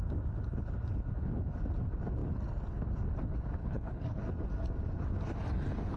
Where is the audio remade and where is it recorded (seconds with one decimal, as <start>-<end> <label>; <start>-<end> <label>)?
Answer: 0.0-3.6 recorded; 3.6-4.2 remade; 4.2-6.0 recorded